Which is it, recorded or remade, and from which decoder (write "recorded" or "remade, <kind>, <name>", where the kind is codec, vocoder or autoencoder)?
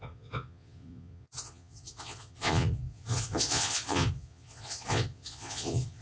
remade, vocoder, Vocos